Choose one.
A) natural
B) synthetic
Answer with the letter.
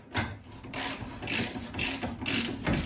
A